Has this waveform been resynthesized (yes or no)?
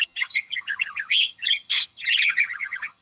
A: yes